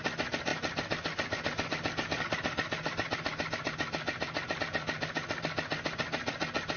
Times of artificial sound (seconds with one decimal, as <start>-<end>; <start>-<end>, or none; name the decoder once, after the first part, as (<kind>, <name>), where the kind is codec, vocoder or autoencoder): none